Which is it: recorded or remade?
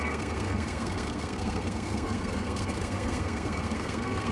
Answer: remade